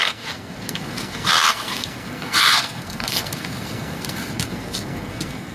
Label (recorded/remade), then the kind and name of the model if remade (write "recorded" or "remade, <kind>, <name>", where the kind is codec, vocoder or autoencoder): remade, codec, SNAC